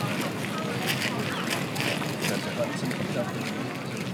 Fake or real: real